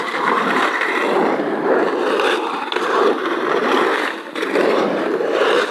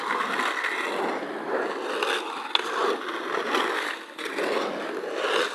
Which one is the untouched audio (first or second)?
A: second